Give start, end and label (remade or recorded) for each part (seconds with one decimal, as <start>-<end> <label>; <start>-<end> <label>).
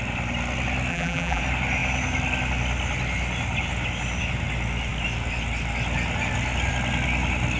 0.0-0.9 recorded; 0.9-1.4 remade; 1.4-7.6 recorded